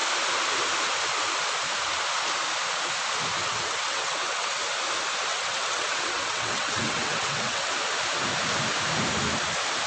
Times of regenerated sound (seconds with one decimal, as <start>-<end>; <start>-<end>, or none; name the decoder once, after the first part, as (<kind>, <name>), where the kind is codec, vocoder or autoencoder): 3.4-4.6 (vocoder, WaveNeXt); 5.3-7.7